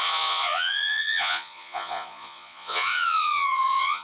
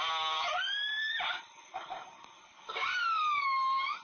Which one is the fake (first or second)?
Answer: first